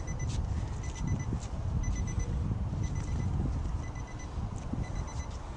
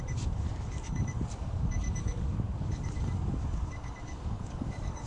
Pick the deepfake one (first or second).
second